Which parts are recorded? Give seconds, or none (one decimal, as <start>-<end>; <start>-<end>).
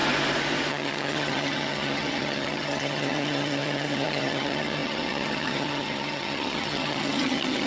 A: 0.0-0.7